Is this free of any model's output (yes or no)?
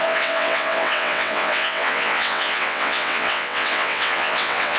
no